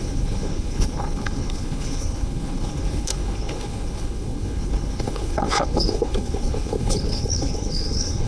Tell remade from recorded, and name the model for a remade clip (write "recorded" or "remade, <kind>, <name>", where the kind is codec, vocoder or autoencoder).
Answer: remade, codec, HILCodec